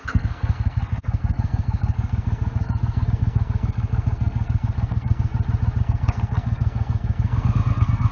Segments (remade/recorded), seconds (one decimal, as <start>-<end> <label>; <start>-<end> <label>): 0.0-5.3 remade; 5.3-5.8 recorded; 5.8-8.1 remade

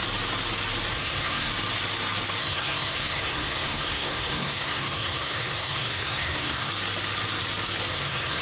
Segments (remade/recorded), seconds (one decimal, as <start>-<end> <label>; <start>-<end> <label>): 0.0-0.9 recorded; 0.9-1.5 remade; 1.5-2.4 recorded; 2.4-6.7 remade; 6.7-7.9 recorded; 7.9-8.4 remade

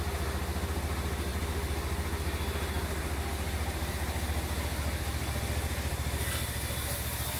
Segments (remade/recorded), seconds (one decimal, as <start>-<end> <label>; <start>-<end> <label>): 0.0-7.4 recorded